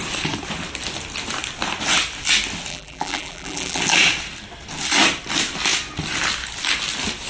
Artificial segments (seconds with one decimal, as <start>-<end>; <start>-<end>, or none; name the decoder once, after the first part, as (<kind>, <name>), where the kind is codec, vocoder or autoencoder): 2.7-3.8 (vocoder, BigVGAN v2)